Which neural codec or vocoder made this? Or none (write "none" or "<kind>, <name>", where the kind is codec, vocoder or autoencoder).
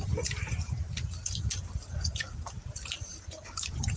vocoder, BigVGAN v2